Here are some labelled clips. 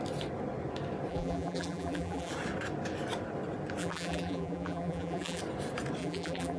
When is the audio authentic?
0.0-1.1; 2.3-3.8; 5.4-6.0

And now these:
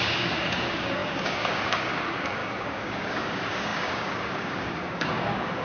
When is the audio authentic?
none